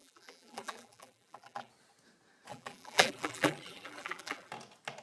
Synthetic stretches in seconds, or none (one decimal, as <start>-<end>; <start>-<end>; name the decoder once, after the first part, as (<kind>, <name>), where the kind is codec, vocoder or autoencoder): 0.0-1.7 (vocoder, BigVGAN v2); 2.5-4.5